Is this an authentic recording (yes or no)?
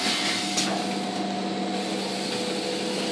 yes